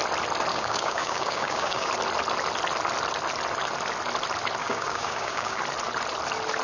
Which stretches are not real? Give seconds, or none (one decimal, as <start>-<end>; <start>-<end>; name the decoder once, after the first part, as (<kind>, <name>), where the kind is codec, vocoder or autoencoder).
0.5-1.9 (codec, DAC); 4.6-5.6